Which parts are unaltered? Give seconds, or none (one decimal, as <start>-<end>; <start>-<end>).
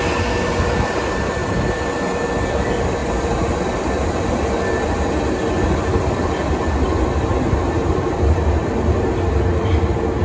0.0-10.2